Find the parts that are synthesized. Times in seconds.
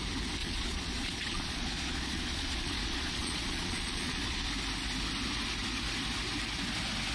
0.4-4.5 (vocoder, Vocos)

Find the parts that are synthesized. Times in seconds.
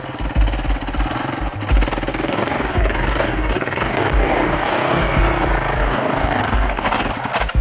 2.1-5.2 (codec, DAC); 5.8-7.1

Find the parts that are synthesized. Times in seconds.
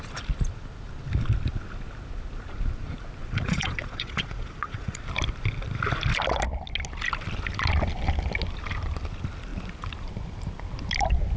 3.2-5.0 (vocoder, Vocos)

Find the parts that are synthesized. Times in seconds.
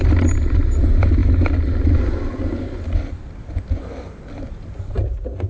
none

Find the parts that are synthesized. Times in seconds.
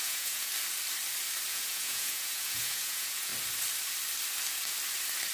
0.0-0.5 (vocoder, Vocos); 1.5-3.3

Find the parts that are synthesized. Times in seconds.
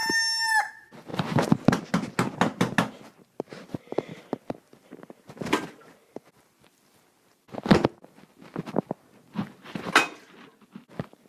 none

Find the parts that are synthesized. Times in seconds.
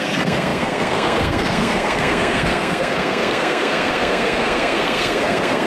0.0-5.7 (codec, SNAC)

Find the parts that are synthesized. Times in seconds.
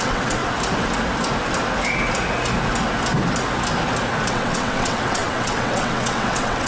0.0-0.4 (vocoder, WaveNeXt); 4.3-6.7